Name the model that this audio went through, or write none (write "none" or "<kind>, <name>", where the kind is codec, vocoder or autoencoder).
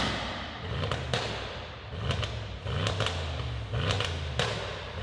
none